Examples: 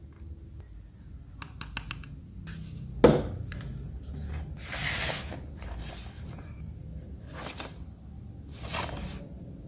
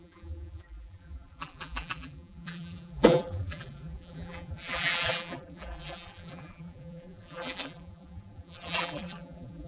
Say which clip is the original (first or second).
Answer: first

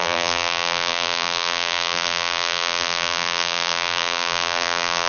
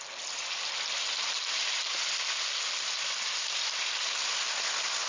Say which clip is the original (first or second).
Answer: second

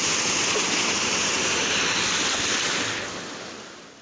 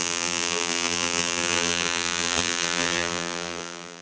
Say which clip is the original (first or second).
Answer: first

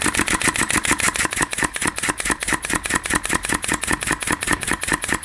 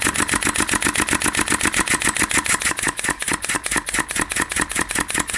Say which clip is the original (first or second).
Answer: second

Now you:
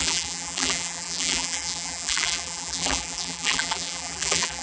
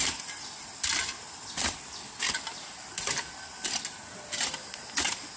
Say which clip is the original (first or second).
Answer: second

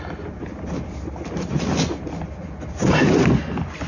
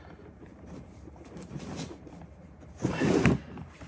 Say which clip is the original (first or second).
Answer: first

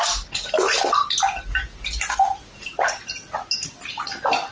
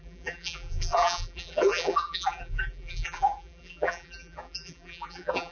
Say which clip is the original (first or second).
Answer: first